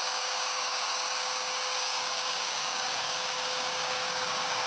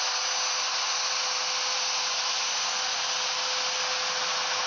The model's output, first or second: first